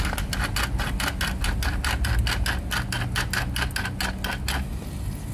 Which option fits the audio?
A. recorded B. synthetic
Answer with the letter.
A